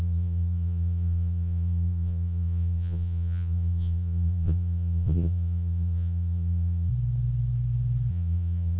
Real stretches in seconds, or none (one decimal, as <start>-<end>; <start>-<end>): 6.9-8.1